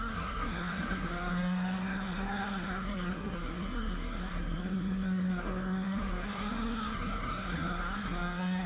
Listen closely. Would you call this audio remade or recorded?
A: remade